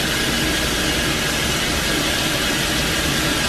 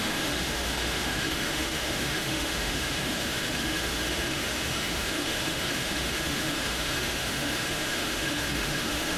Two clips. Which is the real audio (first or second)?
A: first